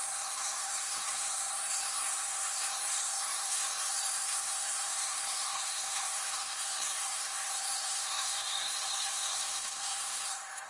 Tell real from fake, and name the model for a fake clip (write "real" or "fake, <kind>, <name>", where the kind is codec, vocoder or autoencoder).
fake, codec, SNAC